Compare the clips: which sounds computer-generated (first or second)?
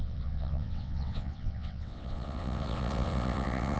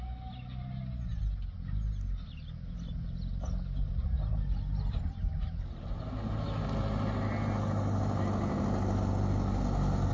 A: first